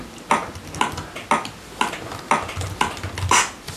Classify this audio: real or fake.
real